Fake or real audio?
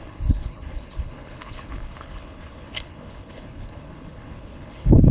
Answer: fake